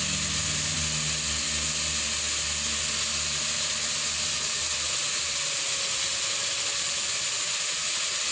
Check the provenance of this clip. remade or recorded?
recorded